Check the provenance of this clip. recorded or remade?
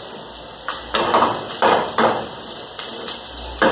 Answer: remade